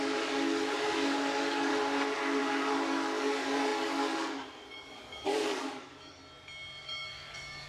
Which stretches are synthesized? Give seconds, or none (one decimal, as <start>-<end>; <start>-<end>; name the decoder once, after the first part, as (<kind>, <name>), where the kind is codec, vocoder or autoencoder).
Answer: 0.0-1.7 (codec, DAC); 2.4-6.2; 6.8-7.7